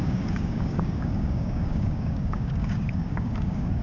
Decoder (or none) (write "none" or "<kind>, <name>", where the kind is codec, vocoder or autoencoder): codec, DAC